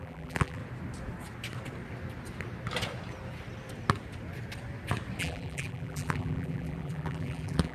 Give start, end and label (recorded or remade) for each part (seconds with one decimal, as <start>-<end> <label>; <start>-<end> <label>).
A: 0.0-0.6 remade; 0.6-5.2 recorded; 5.2-7.7 remade